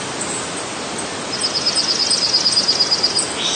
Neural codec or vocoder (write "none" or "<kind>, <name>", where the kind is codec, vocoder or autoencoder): none